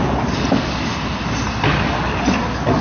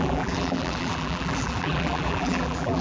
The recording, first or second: first